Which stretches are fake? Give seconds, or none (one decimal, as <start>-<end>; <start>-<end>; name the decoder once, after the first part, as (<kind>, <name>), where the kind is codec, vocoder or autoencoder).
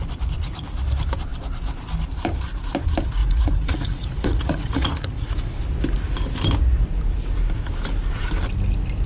3.2-5.6 (vocoder, Vocos)